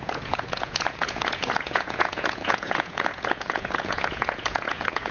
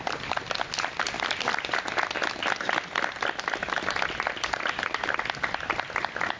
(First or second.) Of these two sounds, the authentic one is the second